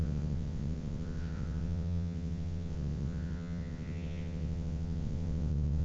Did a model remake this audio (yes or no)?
yes